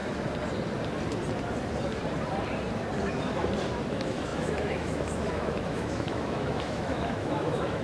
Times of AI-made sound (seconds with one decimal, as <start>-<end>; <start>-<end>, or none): 3.9-7.8